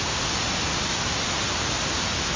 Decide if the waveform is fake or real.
real